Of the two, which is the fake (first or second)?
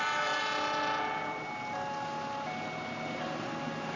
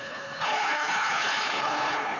second